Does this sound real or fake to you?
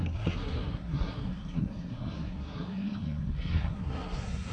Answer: fake